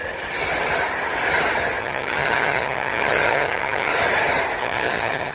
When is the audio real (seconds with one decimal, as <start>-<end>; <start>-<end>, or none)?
0.0-1.8; 3.9-4.6